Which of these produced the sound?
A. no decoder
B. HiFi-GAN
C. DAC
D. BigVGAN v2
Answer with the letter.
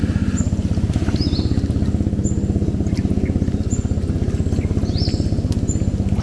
A